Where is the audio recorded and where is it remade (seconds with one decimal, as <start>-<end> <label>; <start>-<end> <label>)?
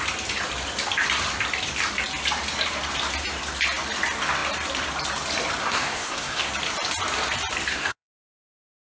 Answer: 0.0-5.6 recorded; 5.6-6.5 remade; 6.5-7.7 recorded; 7.7-8.4 remade; 8.4-8.9 recorded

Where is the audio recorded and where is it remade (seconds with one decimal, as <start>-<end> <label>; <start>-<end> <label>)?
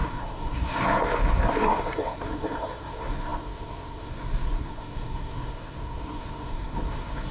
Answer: 0.0-7.3 remade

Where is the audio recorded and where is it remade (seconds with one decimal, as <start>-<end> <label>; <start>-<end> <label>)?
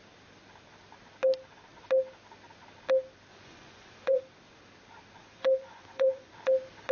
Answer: 0.0-3.3 recorded; 3.3-4.2 remade; 4.2-5.2 recorded; 5.2-6.3 remade; 6.3-6.9 recorded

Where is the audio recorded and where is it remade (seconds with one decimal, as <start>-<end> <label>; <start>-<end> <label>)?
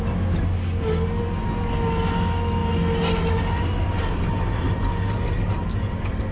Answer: 0.0-6.3 recorded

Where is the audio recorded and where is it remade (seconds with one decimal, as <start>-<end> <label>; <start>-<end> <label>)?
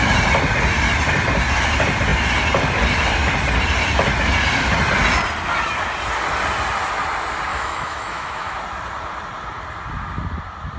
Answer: 0.0-7.5 recorded; 7.5-8.6 remade; 8.6-10.8 recorded